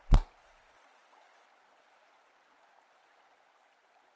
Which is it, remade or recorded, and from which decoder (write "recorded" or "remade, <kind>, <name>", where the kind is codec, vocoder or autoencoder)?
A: recorded